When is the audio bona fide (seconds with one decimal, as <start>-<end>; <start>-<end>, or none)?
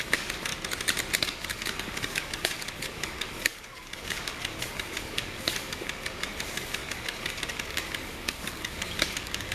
0.5-1.2